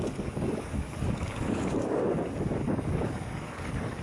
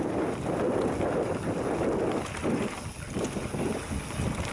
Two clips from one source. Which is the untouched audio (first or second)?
second